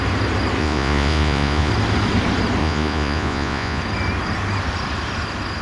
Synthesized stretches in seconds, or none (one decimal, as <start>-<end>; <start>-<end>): 0.6-1.7; 2.6-3.8